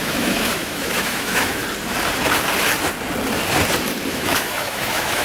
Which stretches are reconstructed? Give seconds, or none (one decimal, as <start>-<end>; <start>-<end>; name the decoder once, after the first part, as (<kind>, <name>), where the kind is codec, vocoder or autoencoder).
0.0-1.6 (autoencoder, DAC-VAE); 4.1-5.2